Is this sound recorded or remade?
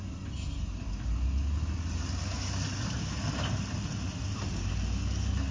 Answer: recorded